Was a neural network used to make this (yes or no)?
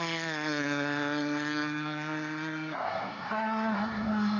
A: yes